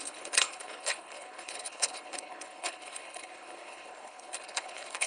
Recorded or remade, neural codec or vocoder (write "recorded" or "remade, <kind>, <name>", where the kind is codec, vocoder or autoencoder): remade, codec, HILCodec